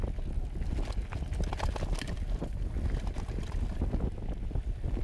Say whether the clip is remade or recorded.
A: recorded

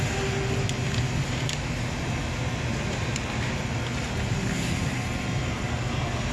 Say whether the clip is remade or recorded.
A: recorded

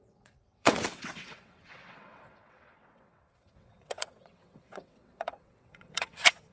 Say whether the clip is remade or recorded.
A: remade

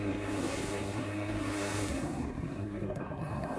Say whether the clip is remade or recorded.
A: remade